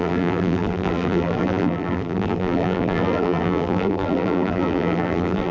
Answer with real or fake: fake